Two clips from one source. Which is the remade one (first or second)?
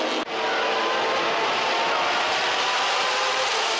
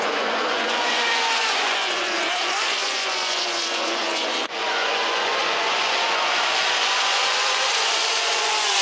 second